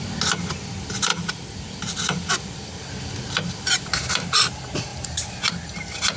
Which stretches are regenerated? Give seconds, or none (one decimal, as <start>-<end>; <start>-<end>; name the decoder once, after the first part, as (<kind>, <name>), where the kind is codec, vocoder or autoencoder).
1.1-2.9 (vocoder, BigVGAN v2); 4.9-5.5